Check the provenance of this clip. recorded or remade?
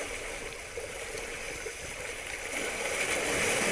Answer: recorded